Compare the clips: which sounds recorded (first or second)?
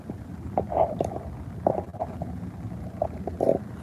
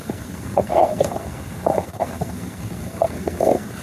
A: first